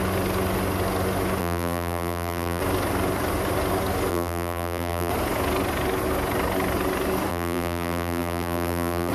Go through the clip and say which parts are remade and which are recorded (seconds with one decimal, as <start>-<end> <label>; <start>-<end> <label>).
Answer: 0.0-1.4 recorded; 1.4-2.6 remade; 2.6-4.1 recorded; 4.1-5.1 remade; 5.1-7.3 recorded; 7.3-9.1 remade